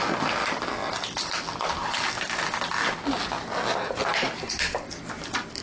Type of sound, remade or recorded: recorded